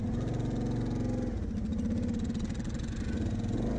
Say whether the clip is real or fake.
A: real